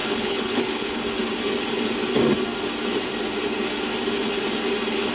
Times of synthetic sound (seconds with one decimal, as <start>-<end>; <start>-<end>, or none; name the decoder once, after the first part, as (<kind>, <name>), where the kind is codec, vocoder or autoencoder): 0.0-1.0 (codec, HILCodec)